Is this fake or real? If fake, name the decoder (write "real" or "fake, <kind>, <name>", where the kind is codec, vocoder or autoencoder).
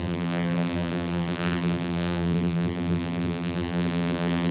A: fake, vocoder, BigVGAN v2